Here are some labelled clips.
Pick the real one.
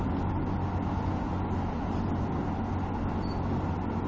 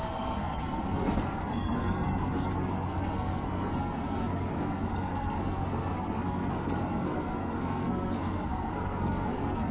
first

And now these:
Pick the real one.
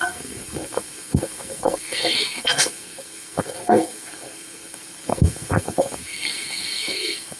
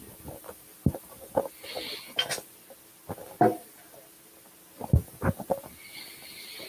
second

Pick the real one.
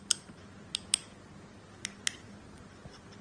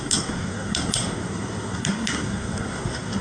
first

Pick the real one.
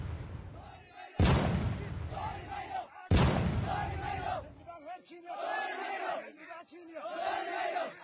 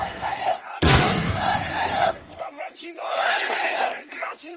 first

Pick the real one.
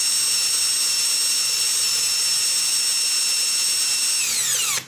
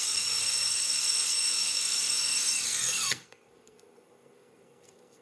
first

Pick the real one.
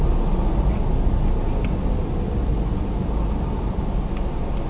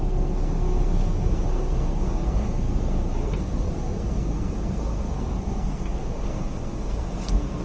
first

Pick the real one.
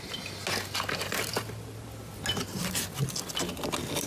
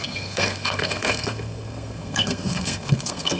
first